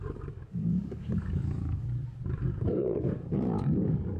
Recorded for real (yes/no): no